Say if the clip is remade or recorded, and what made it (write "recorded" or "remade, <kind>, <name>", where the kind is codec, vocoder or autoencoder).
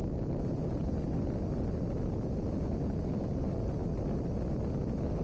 recorded